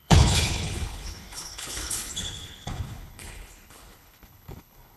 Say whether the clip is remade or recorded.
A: remade